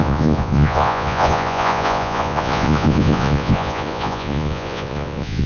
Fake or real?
fake